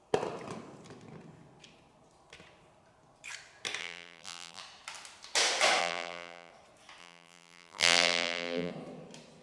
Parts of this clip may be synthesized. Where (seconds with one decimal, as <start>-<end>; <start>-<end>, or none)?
3.8-4.6; 5.8-6.5; 7.0-8.7